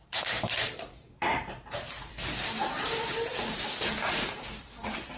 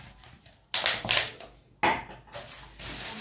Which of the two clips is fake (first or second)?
first